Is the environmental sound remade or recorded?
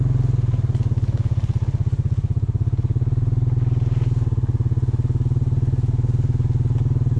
recorded